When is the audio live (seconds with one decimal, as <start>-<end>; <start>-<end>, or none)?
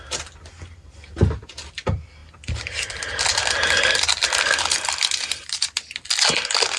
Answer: 0.0-6.8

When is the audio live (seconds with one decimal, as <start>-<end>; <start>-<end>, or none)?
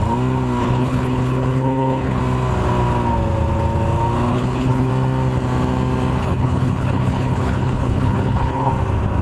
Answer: 0.0-0.6; 2.2-4.3; 4.9-6.2; 8.7-9.2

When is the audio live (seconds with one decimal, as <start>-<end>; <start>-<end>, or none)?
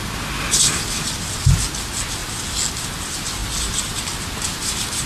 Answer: 0.0-5.1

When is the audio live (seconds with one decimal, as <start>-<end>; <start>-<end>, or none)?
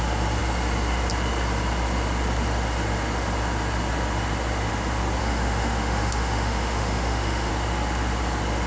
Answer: 0.0-5.2; 7.5-8.7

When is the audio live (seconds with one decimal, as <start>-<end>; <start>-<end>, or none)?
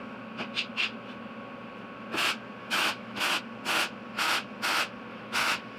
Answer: 0.0-2.6; 3.4-5.1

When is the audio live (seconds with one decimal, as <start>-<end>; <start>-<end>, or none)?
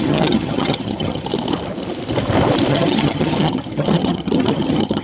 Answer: 1.3-2.7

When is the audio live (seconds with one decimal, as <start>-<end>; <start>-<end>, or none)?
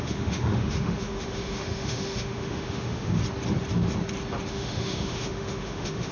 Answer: 3.2-4.5